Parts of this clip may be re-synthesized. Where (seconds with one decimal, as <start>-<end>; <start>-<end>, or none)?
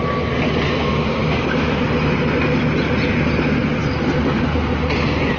none